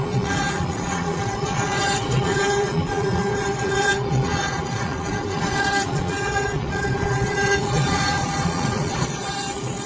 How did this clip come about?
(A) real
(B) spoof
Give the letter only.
B